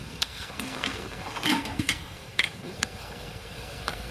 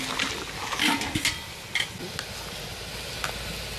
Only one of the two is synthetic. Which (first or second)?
first